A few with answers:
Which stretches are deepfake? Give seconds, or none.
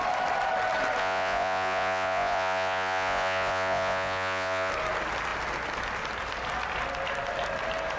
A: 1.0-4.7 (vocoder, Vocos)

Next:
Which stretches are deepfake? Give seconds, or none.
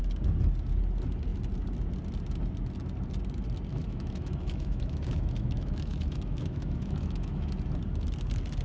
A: 3.7-7.5 (autoencoder, DAC-VAE)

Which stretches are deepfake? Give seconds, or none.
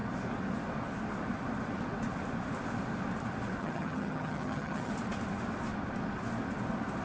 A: 3.6-4.9 (vocoder, HiFi-GAN)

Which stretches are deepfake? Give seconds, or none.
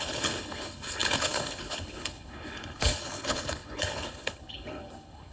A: 0.0-5.3 (codec, HILCodec)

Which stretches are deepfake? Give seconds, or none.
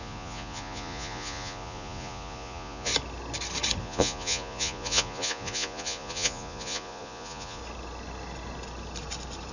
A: 0.0-2.9 (vocoder, Vocos); 3.8-7.6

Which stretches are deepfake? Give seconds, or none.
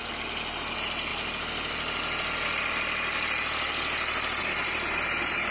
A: none